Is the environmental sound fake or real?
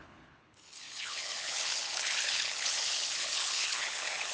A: fake